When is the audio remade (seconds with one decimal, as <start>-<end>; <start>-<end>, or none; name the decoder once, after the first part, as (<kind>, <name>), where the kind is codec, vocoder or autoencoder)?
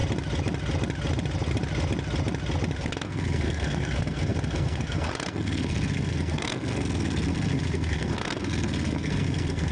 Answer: 2.8-9.7 (codec, SNAC)